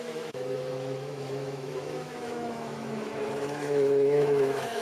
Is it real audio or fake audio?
fake